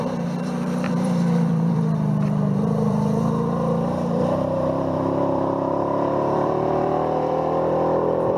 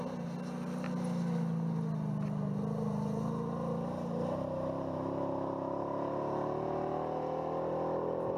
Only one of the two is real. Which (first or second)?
second